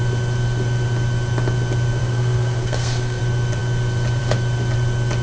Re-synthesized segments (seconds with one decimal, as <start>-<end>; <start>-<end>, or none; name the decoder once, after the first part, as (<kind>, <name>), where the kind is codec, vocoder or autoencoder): 2.0-3.2 (codec, SNAC)